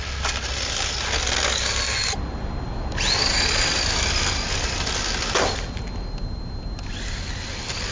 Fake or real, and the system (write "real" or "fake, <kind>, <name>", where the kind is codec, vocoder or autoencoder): real